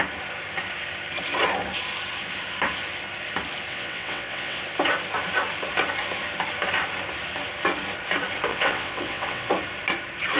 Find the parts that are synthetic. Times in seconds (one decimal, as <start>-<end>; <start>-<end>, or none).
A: 3.7-4.6; 8.5-9.5